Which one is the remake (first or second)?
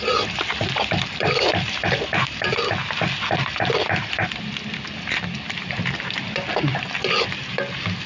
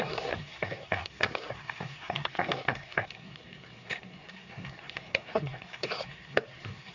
second